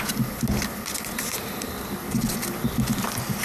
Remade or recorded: recorded